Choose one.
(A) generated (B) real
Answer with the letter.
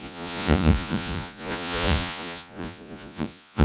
A